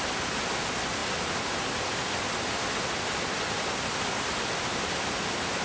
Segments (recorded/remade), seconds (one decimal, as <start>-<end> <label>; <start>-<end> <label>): 0.0-1.0 remade; 1.0-3.1 recorded; 3.1-5.6 remade